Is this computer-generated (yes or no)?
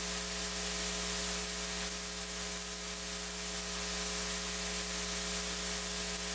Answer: no